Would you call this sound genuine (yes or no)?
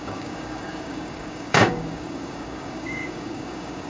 no